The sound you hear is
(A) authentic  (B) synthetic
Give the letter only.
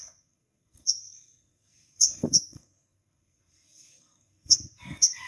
B